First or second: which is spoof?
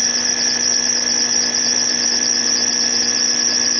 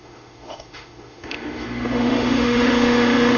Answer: second